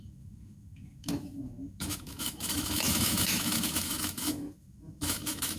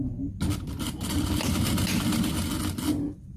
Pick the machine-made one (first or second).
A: first